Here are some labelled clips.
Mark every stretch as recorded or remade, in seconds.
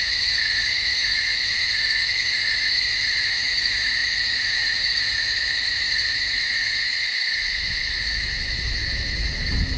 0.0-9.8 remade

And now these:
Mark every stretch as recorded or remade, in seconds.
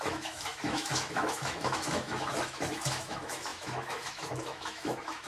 0.0-5.3 remade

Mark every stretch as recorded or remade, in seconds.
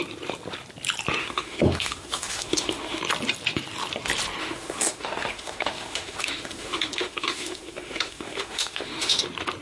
0.0-1.2 recorded; 1.2-3.0 remade; 3.0-4.4 recorded; 4.4-9.2 remade; 9.2-9.6 recorded